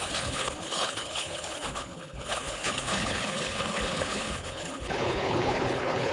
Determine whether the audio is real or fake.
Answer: fake